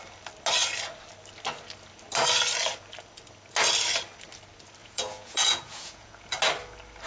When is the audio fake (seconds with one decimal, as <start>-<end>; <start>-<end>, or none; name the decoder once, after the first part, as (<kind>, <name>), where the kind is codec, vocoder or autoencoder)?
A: 4.8-6.1 (vocoder, Vocos)